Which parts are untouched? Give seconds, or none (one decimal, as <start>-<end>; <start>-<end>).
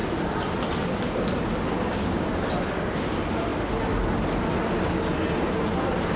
0.0-6.2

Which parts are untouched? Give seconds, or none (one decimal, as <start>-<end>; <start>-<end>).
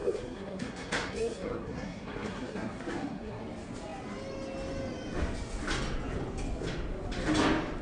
3.4-7.8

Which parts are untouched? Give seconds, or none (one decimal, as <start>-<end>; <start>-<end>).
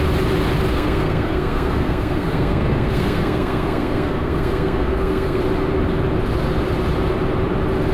0.0-0.7; 5.4-7.9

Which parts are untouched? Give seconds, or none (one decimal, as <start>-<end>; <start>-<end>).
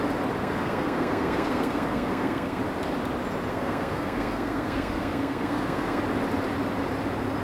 0.0-0.4; 2.6-3.5; 6.0-7.4